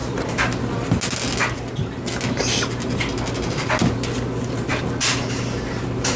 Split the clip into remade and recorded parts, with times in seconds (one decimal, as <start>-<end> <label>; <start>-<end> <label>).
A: 0.0-0.6 remade; 0.6-2.4 recorded; 2.4-3.1 remade; 3.1-6.2 recorded